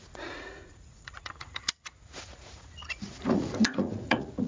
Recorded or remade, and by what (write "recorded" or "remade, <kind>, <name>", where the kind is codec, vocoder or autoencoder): remade, vocoder, Vocos